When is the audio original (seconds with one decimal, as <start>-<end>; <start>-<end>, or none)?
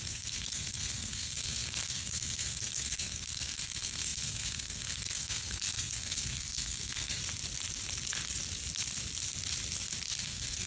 7.2-10.2